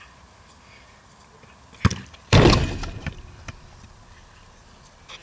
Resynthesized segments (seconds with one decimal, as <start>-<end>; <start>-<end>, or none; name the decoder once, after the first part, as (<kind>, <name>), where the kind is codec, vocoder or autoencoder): 1.9-5.2 (vocoder, BigVGAN v2)